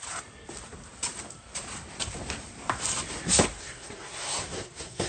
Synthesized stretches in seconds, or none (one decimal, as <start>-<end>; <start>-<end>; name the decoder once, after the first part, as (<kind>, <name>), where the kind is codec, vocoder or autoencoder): 3.6-5.1 (codec, SNAC)